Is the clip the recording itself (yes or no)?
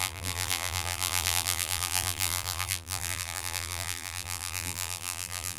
no